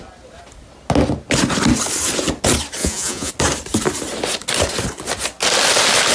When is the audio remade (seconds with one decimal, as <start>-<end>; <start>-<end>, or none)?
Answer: 2.8-3.3